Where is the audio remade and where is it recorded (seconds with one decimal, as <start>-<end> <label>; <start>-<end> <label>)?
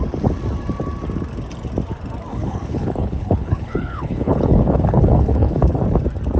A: 0.0-2.3 recorded; 2.3-5.8 remade; 5.8-6.4 recorded